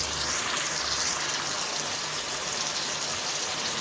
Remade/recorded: recorded